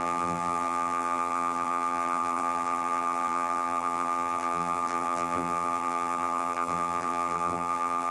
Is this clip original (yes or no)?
no